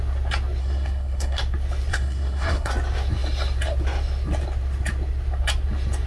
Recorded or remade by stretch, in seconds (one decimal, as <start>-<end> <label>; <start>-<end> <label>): 0.0-0.6 recorded; 0.6-1.4 remade; 1.4-1.9 recorded; 1.9-2.7 remade; 2.7-6.1 recorded